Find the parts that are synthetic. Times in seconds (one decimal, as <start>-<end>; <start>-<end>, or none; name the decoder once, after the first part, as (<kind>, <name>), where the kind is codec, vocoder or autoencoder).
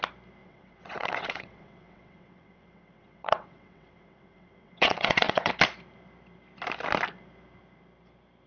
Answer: 0.4-5.5 (vocoder, WaveNeXt)